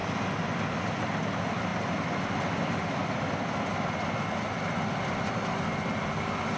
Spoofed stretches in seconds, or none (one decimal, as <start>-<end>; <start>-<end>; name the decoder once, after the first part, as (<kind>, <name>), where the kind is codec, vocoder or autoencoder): none